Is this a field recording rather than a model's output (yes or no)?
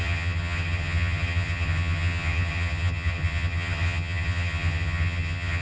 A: no